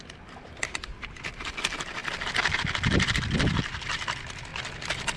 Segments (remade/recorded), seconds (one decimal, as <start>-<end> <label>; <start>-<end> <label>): 0.0-4.5 remade; 4.5-5.2 recorded